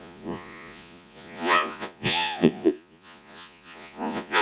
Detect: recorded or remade remade